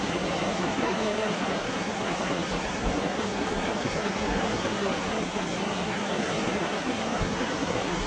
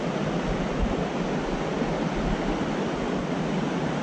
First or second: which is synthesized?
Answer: first